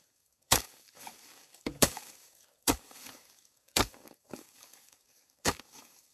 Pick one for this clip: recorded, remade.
remade